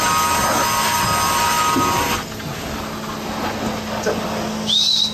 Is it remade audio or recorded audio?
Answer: recorded